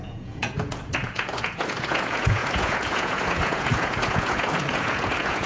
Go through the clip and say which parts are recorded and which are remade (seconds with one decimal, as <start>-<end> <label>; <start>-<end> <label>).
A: 0.0-5.5 remade